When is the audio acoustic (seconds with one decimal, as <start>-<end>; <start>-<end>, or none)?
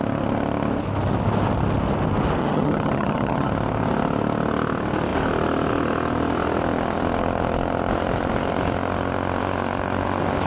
0.0-2.4; 3.5-10.5